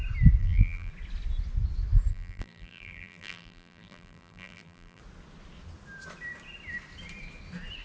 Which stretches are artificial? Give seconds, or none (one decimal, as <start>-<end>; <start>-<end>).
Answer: 0.4-0.9; 2.1-5.0